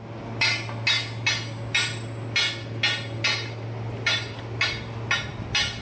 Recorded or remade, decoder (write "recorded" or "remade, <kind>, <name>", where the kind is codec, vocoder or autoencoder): recorded